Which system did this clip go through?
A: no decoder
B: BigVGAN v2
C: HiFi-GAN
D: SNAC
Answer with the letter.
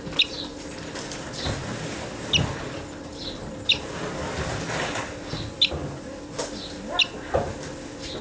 A